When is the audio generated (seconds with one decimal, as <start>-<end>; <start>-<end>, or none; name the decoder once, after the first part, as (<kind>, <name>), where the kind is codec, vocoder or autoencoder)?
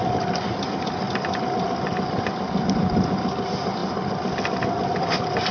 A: none